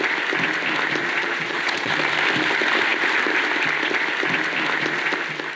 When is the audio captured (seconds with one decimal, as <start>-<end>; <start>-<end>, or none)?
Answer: 0.0-1.0; 1.9-5.6